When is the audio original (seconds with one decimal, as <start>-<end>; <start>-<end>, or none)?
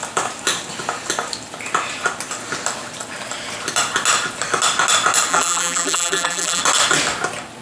0.0-5.3; 6.6-7.6